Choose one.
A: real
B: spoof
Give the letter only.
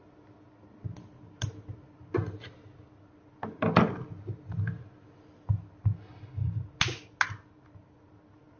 A